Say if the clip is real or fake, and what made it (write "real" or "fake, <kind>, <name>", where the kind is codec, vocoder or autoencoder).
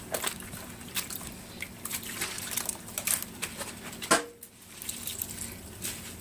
real